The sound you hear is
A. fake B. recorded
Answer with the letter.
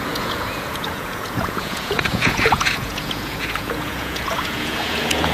A